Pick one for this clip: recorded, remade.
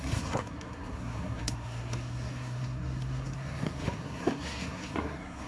remade